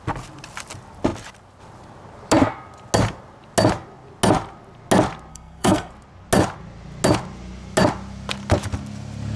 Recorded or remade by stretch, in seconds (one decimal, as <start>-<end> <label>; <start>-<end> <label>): 0.0-5.3 recorded; 5.3-5.9 remade; 5.9-9.4 recorded